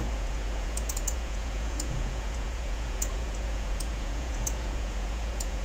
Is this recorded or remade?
remade